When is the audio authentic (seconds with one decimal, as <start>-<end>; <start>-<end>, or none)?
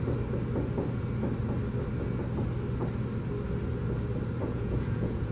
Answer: 0.0-4.4